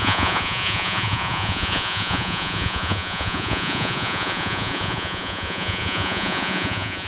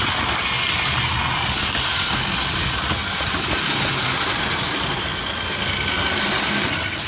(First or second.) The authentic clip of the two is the second